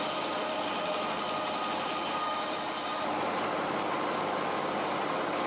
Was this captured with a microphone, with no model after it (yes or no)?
yes